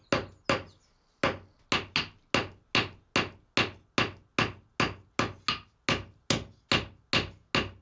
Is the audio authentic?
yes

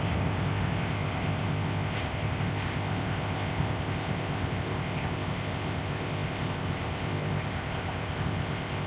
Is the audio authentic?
no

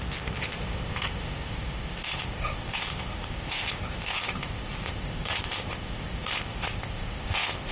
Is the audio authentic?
no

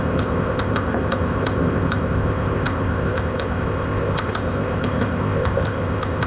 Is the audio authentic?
no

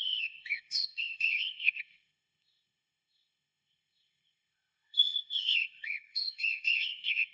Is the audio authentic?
no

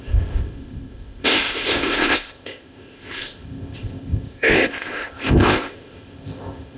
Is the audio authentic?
no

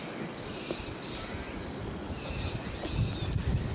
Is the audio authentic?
yes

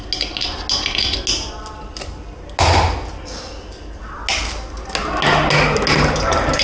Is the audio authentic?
yes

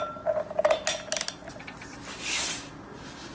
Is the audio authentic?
yes